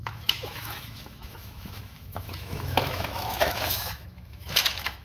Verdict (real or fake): fake